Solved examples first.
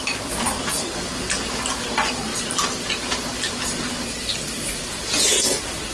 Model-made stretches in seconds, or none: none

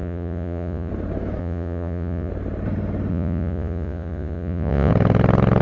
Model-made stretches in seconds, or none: 0.0-0.9 (vocoder, Vocos); 1.4-2.3; 3.1-4.9

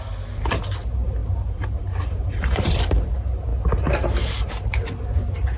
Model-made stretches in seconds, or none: 1.2-3.1 (vocoder, BigVGAN v2)

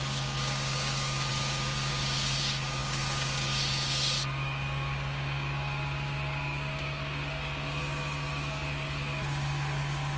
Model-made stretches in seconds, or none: 0.0-10.2 (codec, DAC)

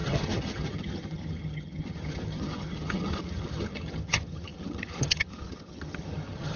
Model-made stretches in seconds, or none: 0.0-6.6 (vocoder, HiFi-GAN)

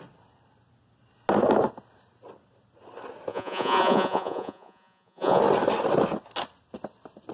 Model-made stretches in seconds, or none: 3.3-5.4 (vocoder, Vocos)

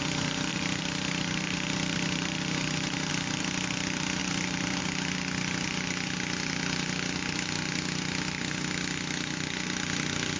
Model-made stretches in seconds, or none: 0.5-3.1 (vocoder, BigVGAN v2); 4.2-4.8